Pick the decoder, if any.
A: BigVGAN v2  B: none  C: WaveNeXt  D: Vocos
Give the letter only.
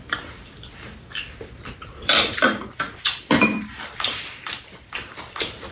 A